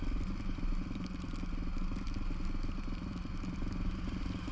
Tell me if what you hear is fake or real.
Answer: real